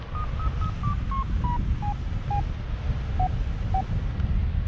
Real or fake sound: real